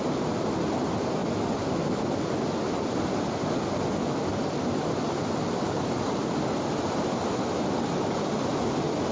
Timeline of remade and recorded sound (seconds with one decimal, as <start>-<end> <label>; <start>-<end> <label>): 0.0-9.1 recorded